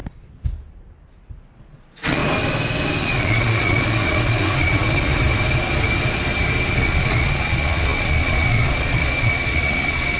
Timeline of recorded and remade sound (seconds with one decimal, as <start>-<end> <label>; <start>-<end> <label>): 0.0-1.4 recorded; 1.4-2.2 remade; 2.2-3.0 recorded; 3.0-5.1 remade; 5.1-6.7 recorded; 6.7-10.2 remade